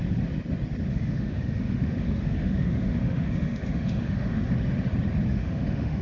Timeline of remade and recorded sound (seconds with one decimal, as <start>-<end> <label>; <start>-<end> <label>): 0.0-0.9 recorded; 0.9-4.5 remade; 4.5-5.3 recorded; 5.3-6.0 remade